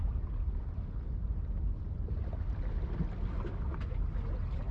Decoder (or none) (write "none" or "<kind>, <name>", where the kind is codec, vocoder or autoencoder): none